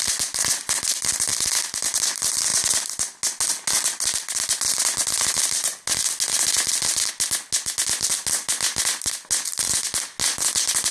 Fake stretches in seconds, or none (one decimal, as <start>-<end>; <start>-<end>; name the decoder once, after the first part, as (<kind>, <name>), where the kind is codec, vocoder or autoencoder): none